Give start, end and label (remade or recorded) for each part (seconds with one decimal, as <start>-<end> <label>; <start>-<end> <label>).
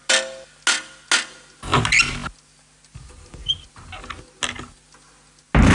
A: 0.0-5.7 recorded